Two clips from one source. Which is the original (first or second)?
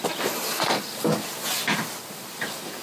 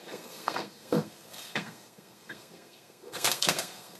first